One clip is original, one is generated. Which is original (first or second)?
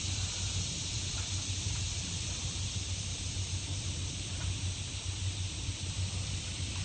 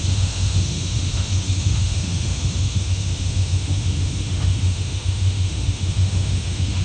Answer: first